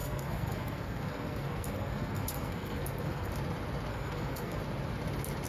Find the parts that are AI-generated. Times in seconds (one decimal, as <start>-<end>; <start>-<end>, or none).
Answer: 0.0-3.3; 3.9-4.6